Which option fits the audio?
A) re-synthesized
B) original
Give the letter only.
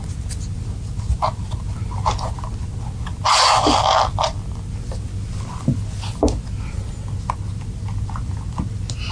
B